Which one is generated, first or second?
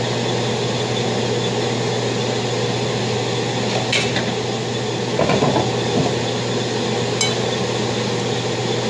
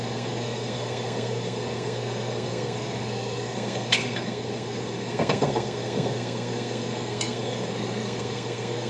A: second